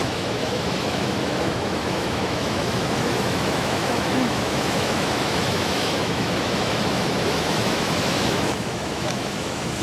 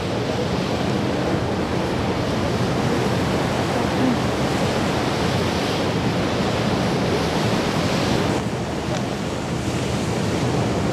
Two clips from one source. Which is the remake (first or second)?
first